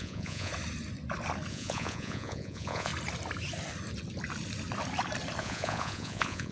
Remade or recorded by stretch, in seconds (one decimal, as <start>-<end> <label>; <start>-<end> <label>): 0.0-0.5 remade; 0.5-1.5 recorded; 1.5-2.9 remade; 2.9-5.4 recorded; 5.4-6.5 remade